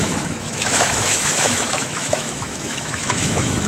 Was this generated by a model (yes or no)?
yes